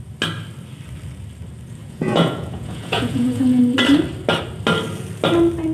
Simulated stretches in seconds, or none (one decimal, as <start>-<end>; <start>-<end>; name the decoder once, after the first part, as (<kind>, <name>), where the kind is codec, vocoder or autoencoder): 1.8-3.6 (vocoder, Vocos)